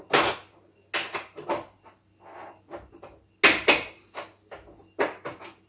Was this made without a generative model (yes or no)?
yes